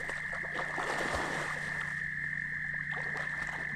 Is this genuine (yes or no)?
yes